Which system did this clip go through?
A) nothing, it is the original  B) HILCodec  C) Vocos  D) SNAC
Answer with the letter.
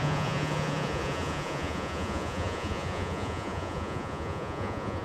C